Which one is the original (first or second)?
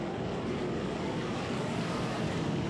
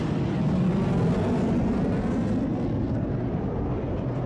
second